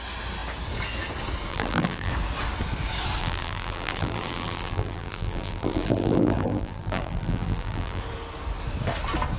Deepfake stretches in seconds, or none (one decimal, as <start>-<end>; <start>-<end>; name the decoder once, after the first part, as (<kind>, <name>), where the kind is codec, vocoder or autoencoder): 1.5-2.1 (vocoder, BigVGAN v2); 3.2-8.0